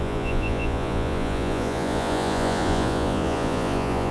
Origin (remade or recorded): remade